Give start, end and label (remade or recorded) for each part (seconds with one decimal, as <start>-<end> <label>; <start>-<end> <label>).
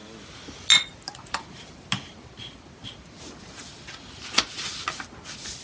0.0-5.6 recorded